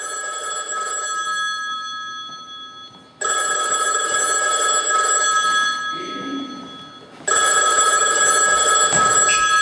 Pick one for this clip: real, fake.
real